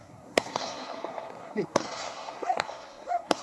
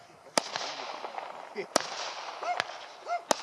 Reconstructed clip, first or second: first